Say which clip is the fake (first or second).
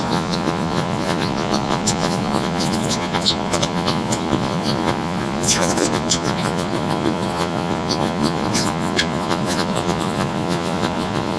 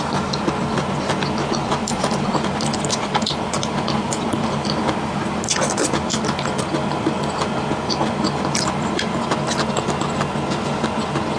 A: first